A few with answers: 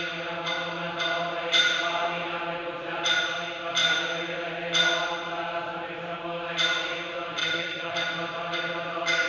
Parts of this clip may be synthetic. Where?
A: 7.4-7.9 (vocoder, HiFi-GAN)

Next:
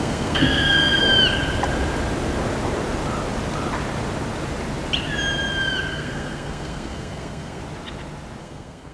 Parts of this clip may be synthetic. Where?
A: 0.0-1.0 (codec, SNAC); 5.9-7.6; 8.4-8.9

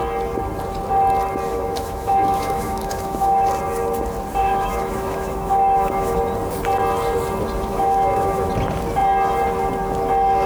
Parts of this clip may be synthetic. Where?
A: 1.5-3.5 (autoencoder, DAC-VAE); 4.4-6.2; 7.7-8.5

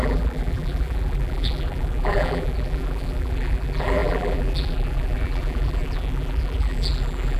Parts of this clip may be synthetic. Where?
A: 0.0-7.4 (vocoder, BigVGAN v2)

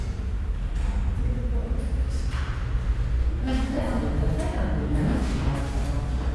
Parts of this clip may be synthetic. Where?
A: 3.2-3.8 (codec, DAC); 4.8-5.6